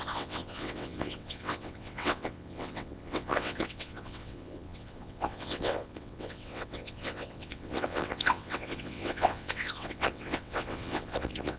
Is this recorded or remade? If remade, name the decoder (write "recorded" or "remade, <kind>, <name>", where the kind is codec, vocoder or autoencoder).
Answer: remade, vocoder, WaveNeXt